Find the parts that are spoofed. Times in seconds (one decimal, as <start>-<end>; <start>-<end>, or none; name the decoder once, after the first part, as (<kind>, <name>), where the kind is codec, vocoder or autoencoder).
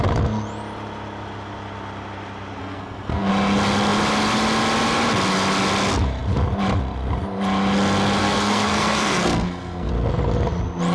2.6-3.3 (codec, SNAC); 8.2-9.9